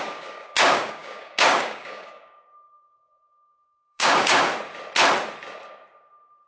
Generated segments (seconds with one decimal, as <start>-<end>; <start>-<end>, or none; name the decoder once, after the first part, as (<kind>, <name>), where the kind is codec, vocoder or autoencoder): 0.0-4.5 (codec, DAC)